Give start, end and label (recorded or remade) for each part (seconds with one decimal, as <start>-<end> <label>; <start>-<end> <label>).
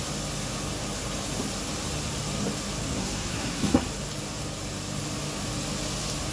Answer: 0.0-3.0 recorded; 3.0-3.9 remade; 3.9-6.3 recorded